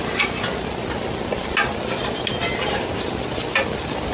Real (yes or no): yes